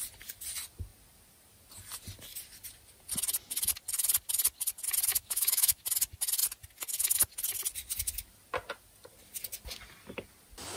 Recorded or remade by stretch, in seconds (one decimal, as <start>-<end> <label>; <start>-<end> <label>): 0.0-5.1 recorded; 5.1-5.8 remade; 5.8-10.8 recorded